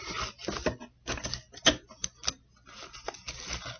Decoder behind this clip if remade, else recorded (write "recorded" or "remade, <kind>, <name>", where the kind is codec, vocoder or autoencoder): recorded